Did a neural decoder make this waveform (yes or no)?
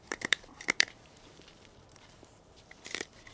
yes